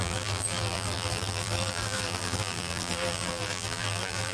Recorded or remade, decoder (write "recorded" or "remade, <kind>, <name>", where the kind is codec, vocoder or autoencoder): remade, vocoder, BigVGAN v2